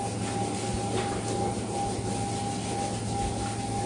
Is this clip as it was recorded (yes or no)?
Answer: yes